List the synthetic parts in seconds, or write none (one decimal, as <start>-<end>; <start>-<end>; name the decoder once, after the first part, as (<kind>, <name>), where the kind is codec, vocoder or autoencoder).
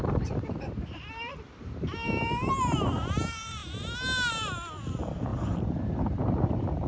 0.0-3.6 (vocoder, BigVGAN v2); 4.3-6.9